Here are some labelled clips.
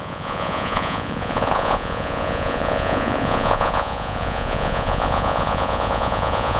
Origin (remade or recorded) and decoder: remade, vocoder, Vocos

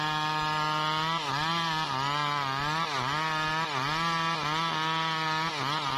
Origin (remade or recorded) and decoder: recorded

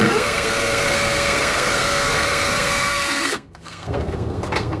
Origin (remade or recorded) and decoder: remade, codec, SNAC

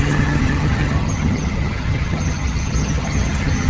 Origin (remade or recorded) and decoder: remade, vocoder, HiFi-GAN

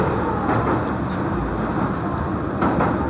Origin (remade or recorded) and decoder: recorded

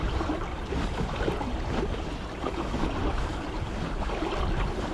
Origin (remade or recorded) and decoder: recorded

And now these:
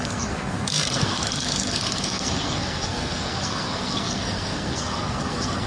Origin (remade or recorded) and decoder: remade, codec, SNAC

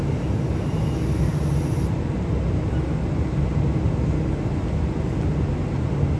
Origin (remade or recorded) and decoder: recorded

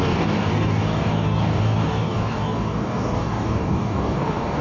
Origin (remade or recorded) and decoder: remade, codec, DAC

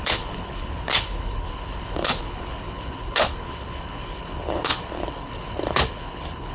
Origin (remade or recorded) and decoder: remade, codec, HILCodec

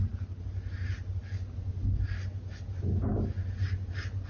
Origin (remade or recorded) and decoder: recorded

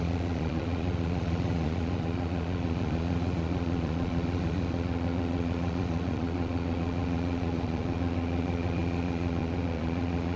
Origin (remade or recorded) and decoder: remade, vocoder, Vocos